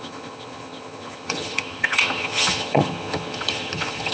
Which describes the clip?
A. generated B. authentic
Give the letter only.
A